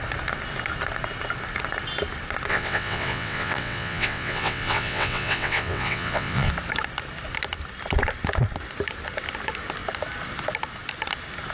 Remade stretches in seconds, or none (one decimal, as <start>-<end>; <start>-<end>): 2.5-6.5